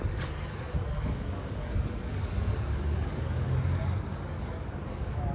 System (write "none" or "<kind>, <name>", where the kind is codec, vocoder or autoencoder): codec, DAC